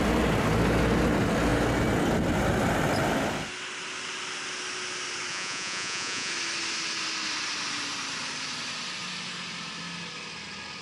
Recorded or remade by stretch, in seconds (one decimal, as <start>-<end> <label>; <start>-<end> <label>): 0.0-5.3 recorded; 5.3-6.3 remade; 6.3-10.8 recorded